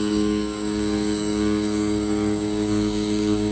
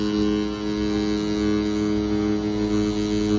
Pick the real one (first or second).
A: second